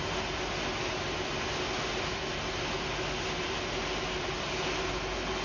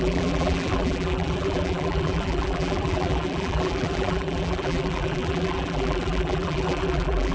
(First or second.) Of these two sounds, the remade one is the second